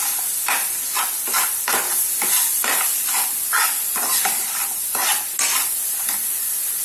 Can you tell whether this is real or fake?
real